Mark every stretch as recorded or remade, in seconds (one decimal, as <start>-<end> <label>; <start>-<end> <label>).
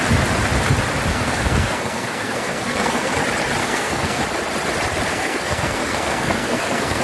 0.0-1.1 recorded; 1.1-3.2 remade; 3.2-3.6 recorded; 3.6-4.2 remade; 4.2-5.1 recorded; 5.1-7.0 remade